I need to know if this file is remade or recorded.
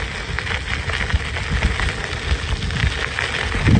recorded